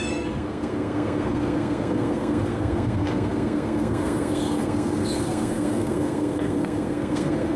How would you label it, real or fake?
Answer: fake